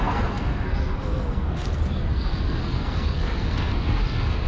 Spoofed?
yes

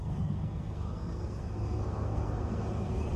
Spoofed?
yes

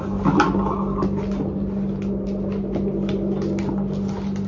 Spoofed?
no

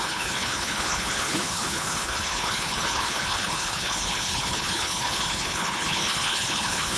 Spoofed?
yes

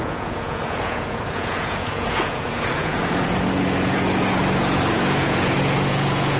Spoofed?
yes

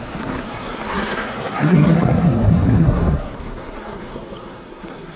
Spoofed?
yes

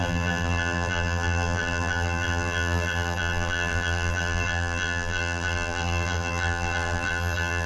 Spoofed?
yes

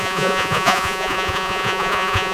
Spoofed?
yes